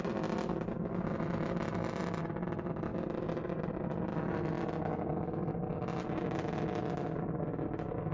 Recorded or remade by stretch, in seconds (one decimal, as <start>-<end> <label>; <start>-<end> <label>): 0.0-2.9 recorded; 2.9-3.5 remade; 3.5-4.1 recorded; 4.1-5.1 remade; 5.1-8.1 recorded